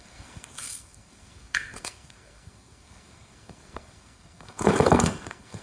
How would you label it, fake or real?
fake